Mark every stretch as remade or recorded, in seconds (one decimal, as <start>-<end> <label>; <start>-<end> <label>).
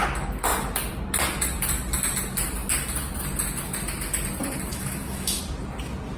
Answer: 0.0-4.7 recorded; 4.7-5.4 remade; 5.4-6.2 recorded